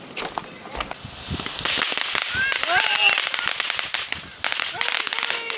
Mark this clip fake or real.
real